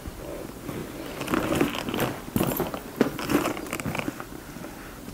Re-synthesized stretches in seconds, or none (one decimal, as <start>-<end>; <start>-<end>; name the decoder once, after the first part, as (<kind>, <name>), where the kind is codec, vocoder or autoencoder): none